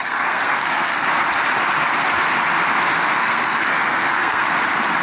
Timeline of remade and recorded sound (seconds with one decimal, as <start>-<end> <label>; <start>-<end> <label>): 0.0-1.1 remade; 1.1-3.2 recorded; 3.2-4.5 remade; 4.5-5.0 recorded